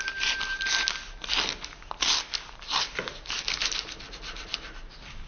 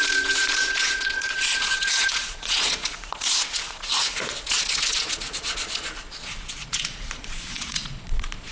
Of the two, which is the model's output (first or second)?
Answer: second